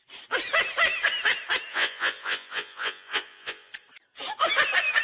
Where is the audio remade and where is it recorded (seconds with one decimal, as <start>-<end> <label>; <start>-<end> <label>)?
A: 0.0-1.7 recorded; 1.7-3.7 remade; 3.7-5.0 recorded